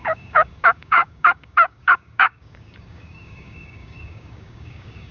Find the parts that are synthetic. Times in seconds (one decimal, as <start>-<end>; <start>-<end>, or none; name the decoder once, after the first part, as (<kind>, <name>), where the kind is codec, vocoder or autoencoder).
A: 0.0-5.1 (codec, DAC)